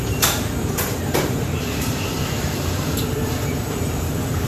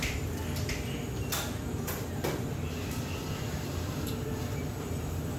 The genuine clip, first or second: second